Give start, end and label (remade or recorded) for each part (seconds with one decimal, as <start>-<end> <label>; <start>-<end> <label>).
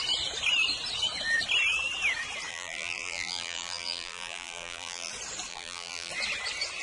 0.0-2.5 recorded; 2.5-5.1 remade; 5.1-5.5 recorded; 5.5-6.1 remade; 6.1-6.8 recorded